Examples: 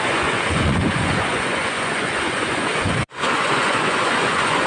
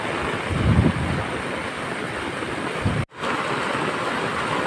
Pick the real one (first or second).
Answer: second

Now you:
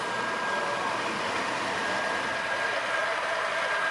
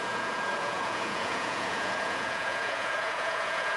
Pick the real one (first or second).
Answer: first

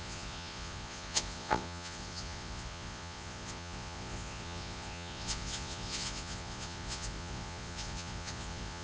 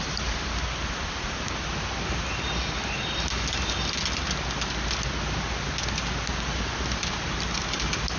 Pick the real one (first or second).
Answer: second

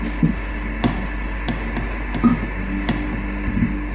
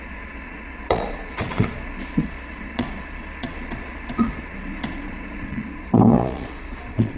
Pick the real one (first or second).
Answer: first